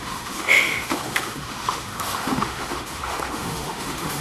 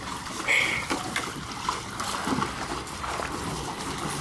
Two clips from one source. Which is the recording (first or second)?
second